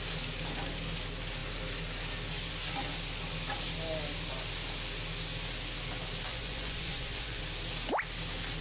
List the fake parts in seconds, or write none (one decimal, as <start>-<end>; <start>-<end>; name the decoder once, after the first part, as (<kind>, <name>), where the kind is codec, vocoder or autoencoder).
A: 6.3-7.4 (vocoder, Vocos)